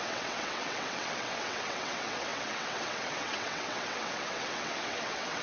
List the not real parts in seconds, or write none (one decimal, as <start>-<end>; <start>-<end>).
0.0-5.4